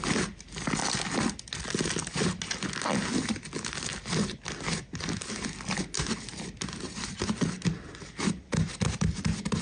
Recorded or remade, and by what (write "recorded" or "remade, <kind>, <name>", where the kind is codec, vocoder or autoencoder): recorded